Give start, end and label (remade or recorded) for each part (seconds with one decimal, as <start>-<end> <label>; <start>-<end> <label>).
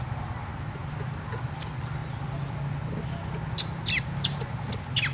0.0-5.1 recorded